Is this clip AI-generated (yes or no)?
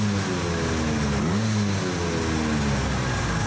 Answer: no